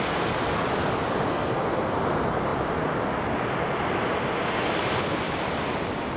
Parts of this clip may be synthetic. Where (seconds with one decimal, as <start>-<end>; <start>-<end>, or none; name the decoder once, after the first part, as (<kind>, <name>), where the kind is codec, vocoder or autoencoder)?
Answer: 1.3-1.9 (codec, SNAC)